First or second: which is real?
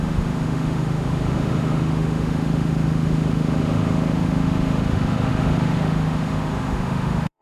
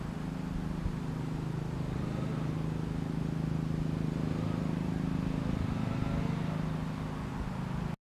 second